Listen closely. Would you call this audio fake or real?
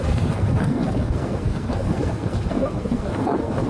fake